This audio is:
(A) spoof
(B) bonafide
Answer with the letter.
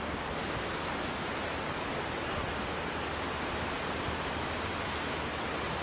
B